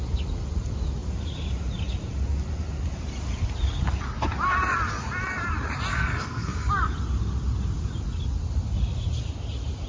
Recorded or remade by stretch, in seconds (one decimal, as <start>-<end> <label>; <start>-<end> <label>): 0.0-5.9 recorded; 5.9-6.7 remade; 6.7-9.9 recorded

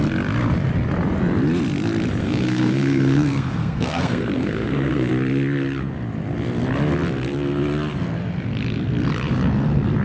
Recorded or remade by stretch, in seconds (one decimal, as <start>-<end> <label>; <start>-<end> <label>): 0.0-2.2 recorded; 2.2-5.1 remade; 5.1-10.0 recorded

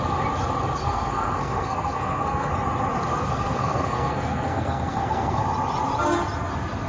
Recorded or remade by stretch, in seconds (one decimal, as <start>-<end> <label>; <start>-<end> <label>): 0.0-0.8 recorded; 0.8-2.5 remade; 2.5-3.1 recorded; 3.1-5.4 remade; 5.4-6.9 recorded